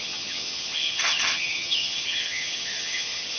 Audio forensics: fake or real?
fake